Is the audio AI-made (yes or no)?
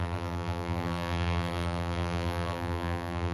yes